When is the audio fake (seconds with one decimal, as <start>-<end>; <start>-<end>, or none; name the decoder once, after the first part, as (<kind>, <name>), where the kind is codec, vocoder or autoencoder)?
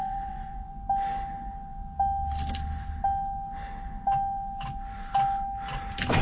0.0-0.7 (vocoder, Vocos)